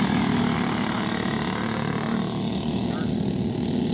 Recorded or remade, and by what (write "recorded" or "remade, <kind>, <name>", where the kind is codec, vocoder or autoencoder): recorded